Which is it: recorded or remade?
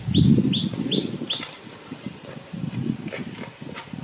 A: recorded